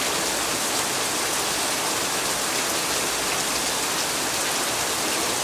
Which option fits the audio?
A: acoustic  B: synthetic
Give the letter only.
A